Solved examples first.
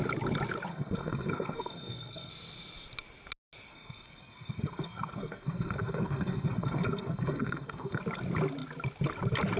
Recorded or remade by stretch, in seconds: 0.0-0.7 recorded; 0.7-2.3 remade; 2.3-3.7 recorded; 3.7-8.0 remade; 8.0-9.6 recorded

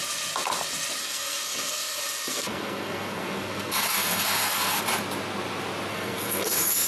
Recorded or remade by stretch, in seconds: 0.0-1.0 recorded; 1.0-4.8 remade; 4.8-5.9 recorded; 5.9-6.9 remade

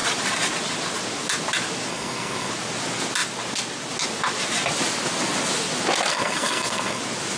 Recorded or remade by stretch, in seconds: 0.0-1.9 recorded; 1.9-2.5 remade; 2.5-6.1 recorded; 6.1-7.0 remade; 7.0-7.4 recorded

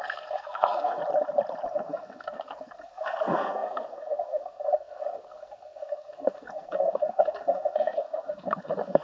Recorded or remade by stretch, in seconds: 0.0-1.0 remade; 1.0-1.7 recorded; 1.7-9.0 remade